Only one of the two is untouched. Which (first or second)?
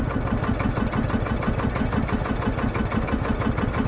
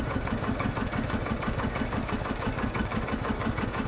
first